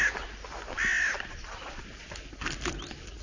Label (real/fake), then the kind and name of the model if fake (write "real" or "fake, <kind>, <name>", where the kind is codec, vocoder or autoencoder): real